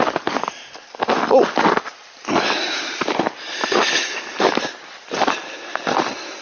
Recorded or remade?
recorded